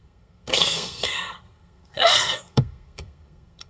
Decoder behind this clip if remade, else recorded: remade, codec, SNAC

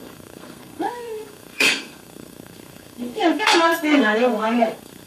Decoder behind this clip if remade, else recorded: remade, codec, SNAC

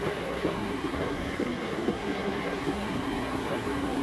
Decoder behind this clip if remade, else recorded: remade, codec, SNAC